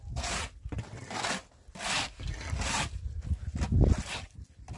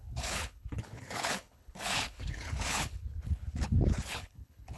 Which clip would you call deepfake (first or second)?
second